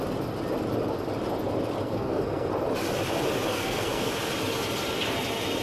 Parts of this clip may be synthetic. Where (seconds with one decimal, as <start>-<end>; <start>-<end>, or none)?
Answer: 1.8-2.5; 3.5-4.1